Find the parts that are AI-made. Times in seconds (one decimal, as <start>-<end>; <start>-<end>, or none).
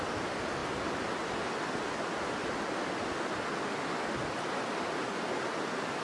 none